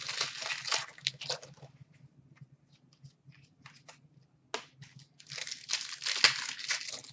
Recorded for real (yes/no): yes